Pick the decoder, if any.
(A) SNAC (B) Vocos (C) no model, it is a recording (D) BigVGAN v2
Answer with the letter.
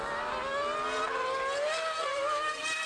C